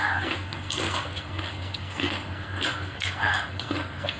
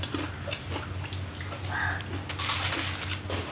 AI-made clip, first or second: first